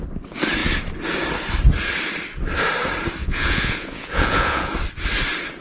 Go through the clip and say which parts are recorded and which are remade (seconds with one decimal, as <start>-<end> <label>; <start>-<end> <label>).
0.0-3.2 recorded; 3.2-4.7 remade; 4.7-5.6 recorded